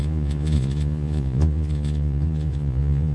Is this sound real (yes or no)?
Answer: no